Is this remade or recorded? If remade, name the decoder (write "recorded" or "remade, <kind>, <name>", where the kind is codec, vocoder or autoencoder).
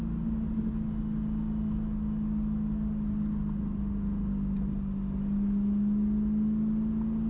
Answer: recorded